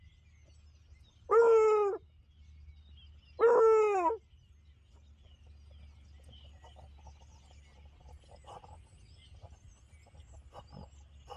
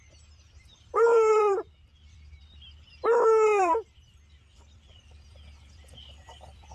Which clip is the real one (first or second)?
first